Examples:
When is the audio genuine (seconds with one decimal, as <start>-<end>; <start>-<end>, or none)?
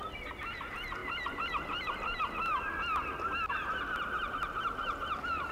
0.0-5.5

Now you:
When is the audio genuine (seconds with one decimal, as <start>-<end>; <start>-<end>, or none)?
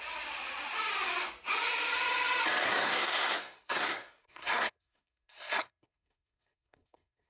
0.0-2.6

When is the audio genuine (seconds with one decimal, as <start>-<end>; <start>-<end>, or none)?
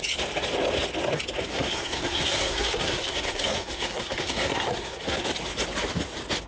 0.0-1.5; 5.3-6.5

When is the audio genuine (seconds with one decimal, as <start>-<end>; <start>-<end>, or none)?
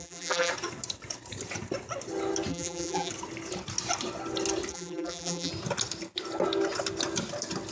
0.5-2.5; 3.1-4.7; 5.5-7.7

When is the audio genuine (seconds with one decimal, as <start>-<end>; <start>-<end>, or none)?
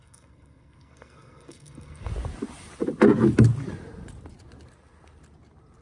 2.1-5.8